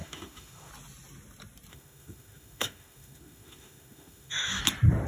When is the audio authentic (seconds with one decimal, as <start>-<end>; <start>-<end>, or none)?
0.7-1.7; 4.6-5.1

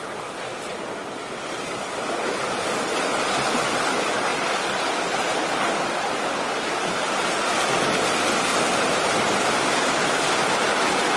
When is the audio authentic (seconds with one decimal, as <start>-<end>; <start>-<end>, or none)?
0.0-11.2

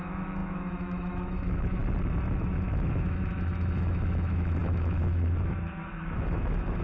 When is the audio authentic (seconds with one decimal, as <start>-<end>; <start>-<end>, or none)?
1.8-2.4

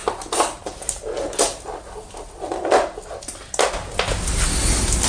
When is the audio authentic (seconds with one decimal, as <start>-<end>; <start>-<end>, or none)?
0.0-5.1